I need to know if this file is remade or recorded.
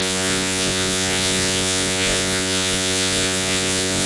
remade